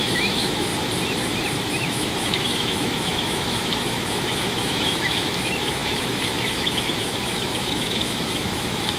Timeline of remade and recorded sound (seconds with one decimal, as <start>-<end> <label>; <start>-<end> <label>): 0.0-0.7 remade; 0.7-1.7 recorded; 1.7-9.0 remade